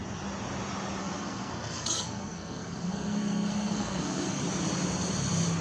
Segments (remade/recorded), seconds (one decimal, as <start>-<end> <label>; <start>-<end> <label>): 0.0-1.0 recorded; 1.0-4.4 remade; 4.4-5.6 recorded